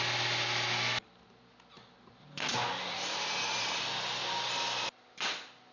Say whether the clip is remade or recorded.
recorded